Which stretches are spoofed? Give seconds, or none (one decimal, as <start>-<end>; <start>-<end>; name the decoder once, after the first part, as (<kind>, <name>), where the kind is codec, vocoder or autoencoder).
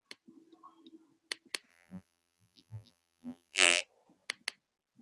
1.7-3.8 (vocoder, BigVGAN v2)